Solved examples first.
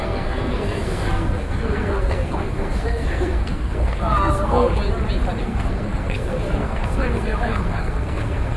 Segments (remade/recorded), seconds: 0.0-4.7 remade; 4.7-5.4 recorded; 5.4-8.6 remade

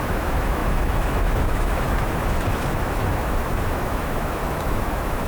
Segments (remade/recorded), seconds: 0.0-5.3 remade

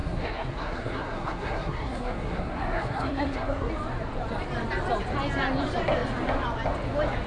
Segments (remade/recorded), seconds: 0.0-3.7 remade; 3.7-7.3 recorded

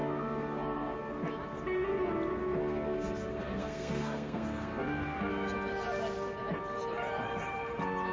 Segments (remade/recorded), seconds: 0.0-1.1 remade; 1.1-2.6 recorded; 2.6-5.3 remade; 5.3-8.1 recorded

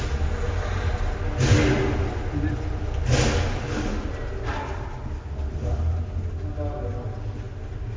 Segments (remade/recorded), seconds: 0.0-8.0 recorded

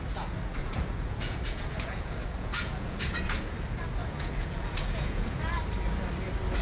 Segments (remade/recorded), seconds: 0.0-0.6 recorded; 0.6-3.5 remade; 3.5-4.0 recorded; 4.0-5.4 remade; 5.4-6.6 recorded

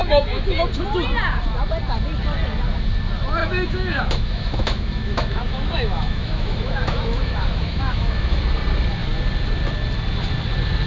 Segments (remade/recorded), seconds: 0.0-0.7 remade; 0.7-3.4 recorded; 3.4-8.4 remade; 8.4-10.9 recorded